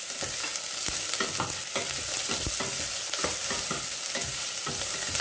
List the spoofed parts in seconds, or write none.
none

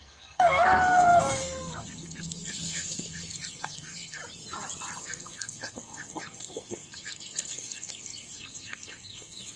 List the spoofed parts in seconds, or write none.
0.0-4.2 (codec, SNAC); 5.0-9.6

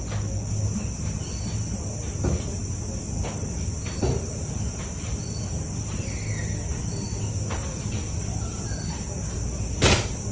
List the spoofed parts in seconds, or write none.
none

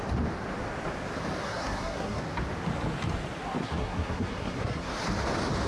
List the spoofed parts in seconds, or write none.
1.4-2.2 (codec, SNAC); 3.6-4.9

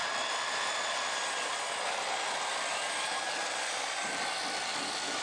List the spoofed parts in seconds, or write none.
none

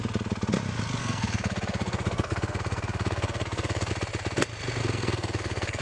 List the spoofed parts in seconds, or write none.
1.0-3.9 (codec, SNAC); 4.8-5.8